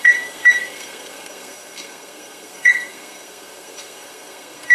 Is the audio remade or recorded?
remade